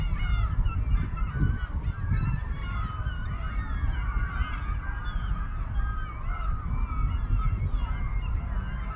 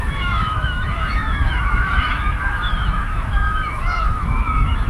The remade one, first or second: second